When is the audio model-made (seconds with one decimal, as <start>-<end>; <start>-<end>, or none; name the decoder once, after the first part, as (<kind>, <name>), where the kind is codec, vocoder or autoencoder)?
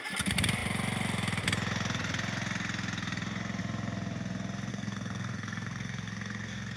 4.7-6.8 (codec, SNAC)